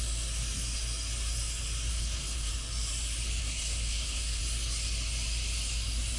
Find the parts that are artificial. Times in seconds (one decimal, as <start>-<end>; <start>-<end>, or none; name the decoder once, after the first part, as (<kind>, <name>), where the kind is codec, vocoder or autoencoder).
1.9-2.5 (codec, SNAC); 3.4-4.4